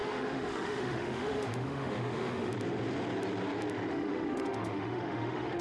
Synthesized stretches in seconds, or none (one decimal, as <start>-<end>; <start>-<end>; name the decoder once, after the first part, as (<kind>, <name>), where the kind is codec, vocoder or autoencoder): 0.0-2.5 (autoencoder, DAC-VAE); 3.9-5.6